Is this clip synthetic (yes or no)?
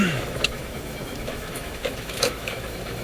yes